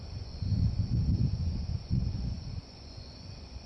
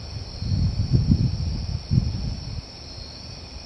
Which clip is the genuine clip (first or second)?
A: second